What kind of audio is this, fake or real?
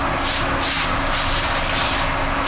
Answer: real